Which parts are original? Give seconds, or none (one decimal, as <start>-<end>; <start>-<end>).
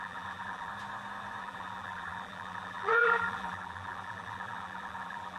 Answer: 0.7-1.4